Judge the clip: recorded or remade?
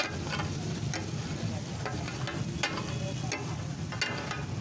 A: recorded